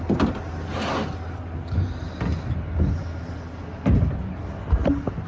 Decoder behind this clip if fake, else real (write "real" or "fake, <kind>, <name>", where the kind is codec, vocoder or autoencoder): real